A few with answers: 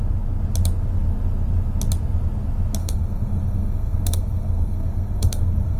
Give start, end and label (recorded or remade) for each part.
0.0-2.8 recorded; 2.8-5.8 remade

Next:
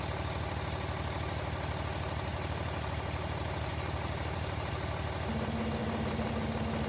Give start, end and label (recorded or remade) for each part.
0.0-2.3 recorded; 2.3-4.7 remade; 4.7-5.8 recorded; 5.8-6.3 remade; 6.3-6.9 recorded

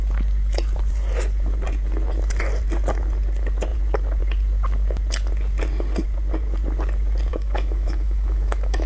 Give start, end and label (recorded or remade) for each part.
0.0-7.3 recorded; 7.3-8.9 remade